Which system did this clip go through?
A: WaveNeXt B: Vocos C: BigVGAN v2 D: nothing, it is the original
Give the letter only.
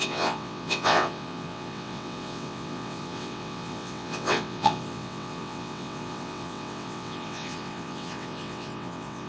A